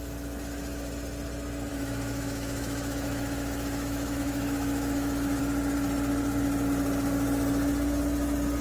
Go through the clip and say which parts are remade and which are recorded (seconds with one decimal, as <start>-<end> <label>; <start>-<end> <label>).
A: 0.0-1.7 recorded; 1.7-5.4 remade; 5.4-8.6 recorded